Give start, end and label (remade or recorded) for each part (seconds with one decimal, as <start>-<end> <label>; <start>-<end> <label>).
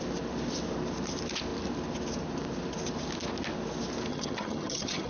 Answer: 0.0-4.1 recorded; 4.1-5.1 remade